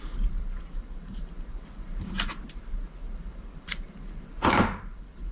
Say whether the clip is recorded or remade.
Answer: remade